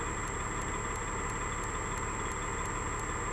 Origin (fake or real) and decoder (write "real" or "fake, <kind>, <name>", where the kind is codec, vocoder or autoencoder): real